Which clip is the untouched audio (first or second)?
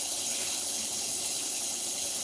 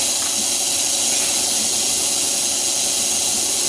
second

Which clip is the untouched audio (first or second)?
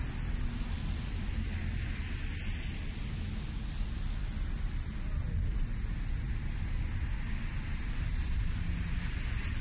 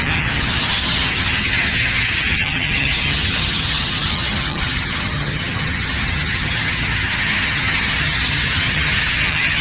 first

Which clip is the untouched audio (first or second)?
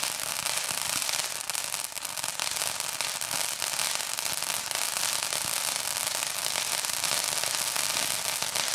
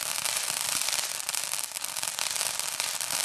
first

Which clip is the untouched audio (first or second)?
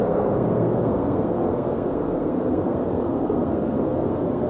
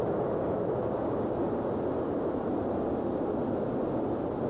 second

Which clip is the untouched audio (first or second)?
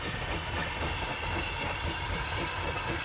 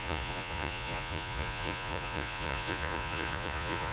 first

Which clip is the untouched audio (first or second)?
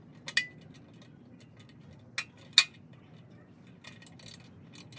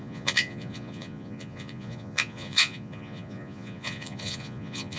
first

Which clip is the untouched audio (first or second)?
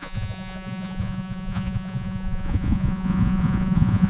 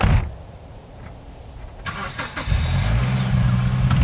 second